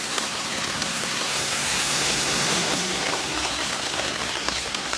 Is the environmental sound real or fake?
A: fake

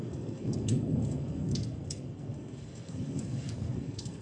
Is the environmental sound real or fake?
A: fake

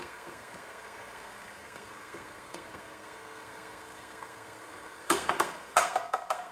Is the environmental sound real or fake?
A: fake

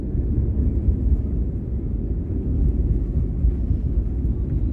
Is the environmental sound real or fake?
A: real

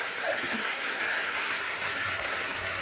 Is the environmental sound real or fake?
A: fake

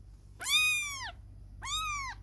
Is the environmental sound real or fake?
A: real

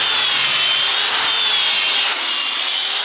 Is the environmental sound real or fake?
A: real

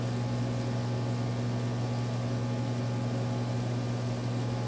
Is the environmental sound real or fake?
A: real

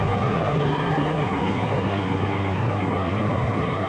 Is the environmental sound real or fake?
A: fake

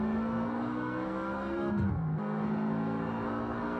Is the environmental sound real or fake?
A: fake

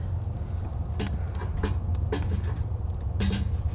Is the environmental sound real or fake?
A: real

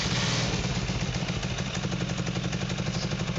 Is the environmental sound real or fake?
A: real